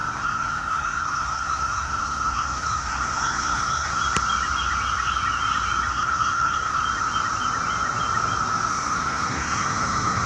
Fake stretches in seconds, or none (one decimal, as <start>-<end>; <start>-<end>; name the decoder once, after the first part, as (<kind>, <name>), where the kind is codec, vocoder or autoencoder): 0.0-4.0 (codec, SNAC); 5.9-6.8; 8.7-10.3